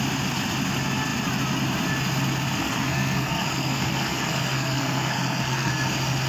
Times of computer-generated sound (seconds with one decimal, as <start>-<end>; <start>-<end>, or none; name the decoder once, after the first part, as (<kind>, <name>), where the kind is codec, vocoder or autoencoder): 2.6-5.7 (codec, SNAC)